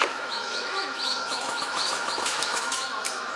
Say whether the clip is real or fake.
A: fake